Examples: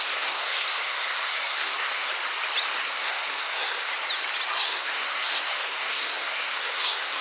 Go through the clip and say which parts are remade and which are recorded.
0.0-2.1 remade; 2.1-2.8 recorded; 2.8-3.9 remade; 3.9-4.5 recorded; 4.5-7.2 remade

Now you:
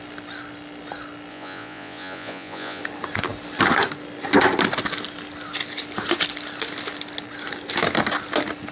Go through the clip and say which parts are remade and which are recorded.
0.0-1.3 recorded; 1.3-2.8 remade; 2.8-8.7 recorded

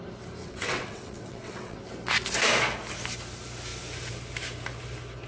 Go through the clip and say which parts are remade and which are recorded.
0.0-0.4 recorded; 0.4-1.8 remade; 1.8-5.3 recorded

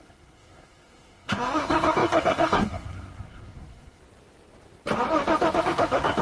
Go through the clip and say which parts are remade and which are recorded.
0.0-4.0 remade; 4.0-5.6 recorded; 5.6-6.2 remade

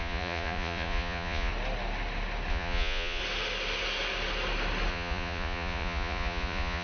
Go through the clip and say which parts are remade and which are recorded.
0.0-1.5 remade; 1.5-2.5 recorded; 2.5-3.2 remade; 3.2-4.9 recorded; 4.9-6.8 remade